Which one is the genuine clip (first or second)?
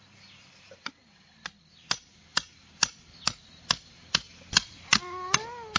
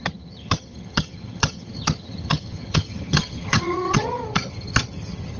first